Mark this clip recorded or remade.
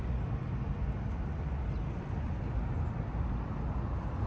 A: recorded